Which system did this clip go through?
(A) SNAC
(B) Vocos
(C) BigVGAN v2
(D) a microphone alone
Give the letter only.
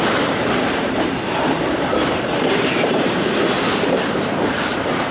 C